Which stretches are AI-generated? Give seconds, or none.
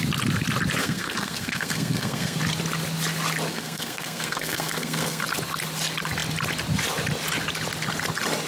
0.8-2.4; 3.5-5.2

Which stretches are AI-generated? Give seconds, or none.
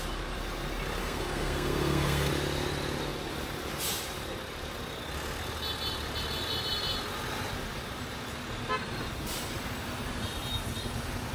1.0-2.3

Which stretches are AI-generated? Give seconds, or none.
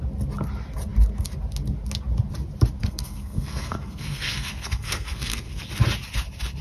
2.8-5.6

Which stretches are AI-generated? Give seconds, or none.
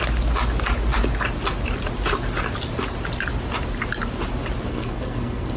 4.7-5.6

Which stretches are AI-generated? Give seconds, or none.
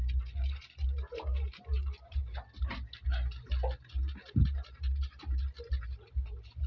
none